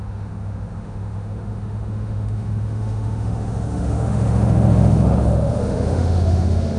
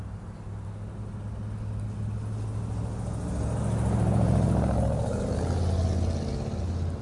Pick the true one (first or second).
second